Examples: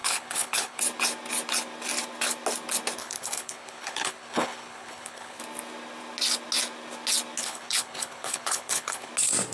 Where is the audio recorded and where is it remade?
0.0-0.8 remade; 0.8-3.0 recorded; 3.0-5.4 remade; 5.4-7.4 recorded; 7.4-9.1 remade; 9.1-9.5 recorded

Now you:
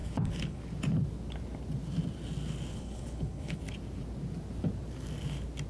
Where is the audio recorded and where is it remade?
0.0-0.6 remade; 0.6-2.7 recorded; 2.7-3.6 remade; 3.6-5.7 recorded

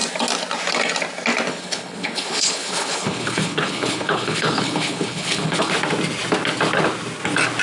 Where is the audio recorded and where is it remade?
0.0-1.5 recorded; 1.5-5.7 remade; 5.7-7.6 recorded

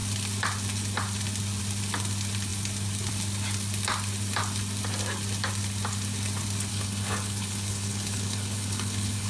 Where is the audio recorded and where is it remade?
0.0-6.7 recorded; 6.7-9.3 remade

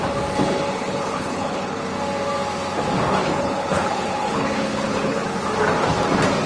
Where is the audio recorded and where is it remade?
0.0-0.7 recorded; 0.7-1.8 remade; 1.8-3.2 recorded; 3.2-5.5 remade; 5.5-6.5 recorded

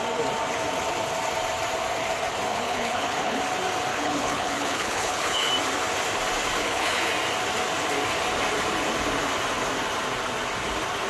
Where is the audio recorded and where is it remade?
0.0-2.5 recorded; 2.5-3.4 remade; 3.4-3.9 recorded; 3.9-5.5 remade; 5.5-6.6 recorded; 6.6-7.1 remade; 7.1-11.1 recorded